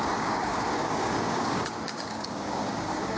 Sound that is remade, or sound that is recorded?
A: remade